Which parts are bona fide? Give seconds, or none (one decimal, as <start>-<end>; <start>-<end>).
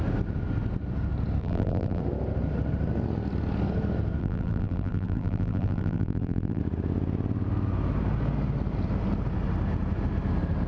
0.0-1.4; 2.0-4.2; 6.6-10.7